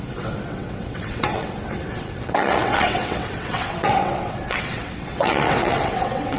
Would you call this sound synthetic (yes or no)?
yes